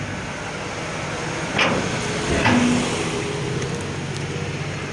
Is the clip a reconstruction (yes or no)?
no